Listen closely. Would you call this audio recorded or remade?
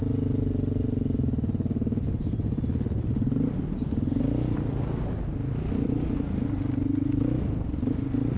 recorded